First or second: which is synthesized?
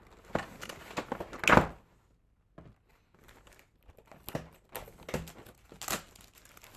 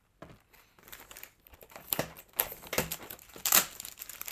second